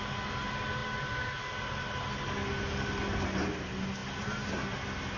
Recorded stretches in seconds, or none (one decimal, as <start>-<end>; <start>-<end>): 0.0-5.2